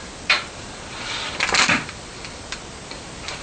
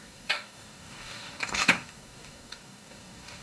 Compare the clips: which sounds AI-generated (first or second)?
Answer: second